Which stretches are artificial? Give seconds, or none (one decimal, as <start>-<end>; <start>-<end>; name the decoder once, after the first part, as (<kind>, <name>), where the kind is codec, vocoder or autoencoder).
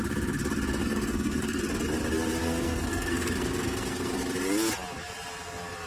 0.8-1.6 (codec, SNAC); 2.4-4.2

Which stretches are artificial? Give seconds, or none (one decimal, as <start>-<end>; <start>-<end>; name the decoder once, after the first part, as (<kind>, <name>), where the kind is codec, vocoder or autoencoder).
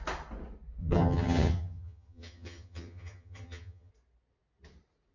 0.8-3.9 (vocoder, HiFi-GAN)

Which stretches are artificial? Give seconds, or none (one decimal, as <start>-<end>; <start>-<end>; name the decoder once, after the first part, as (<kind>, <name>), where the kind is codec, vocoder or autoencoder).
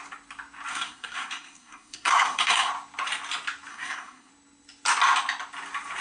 0.7-2.7 (codec, SNAC); 3.7-4.3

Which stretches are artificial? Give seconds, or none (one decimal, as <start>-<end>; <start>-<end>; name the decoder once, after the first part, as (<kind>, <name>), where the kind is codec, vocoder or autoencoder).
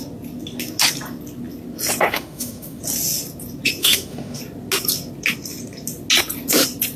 2.1-2.8 (autoencoder, DAC-VAE); 3.8-4.4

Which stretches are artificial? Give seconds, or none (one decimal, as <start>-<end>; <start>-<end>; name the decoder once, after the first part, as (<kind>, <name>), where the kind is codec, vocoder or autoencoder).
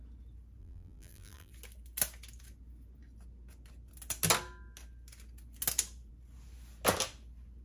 0.6-1.5 (vocoder, BigVGAN v2)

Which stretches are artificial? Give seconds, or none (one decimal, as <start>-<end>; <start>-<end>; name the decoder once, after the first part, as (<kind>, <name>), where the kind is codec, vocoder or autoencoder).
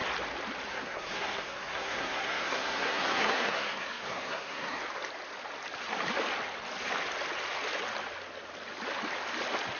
0.7-4.8 (codec, SNAC)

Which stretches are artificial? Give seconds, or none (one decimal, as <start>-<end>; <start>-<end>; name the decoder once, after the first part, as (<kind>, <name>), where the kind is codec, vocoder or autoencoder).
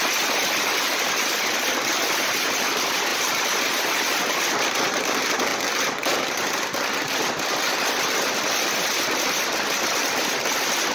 none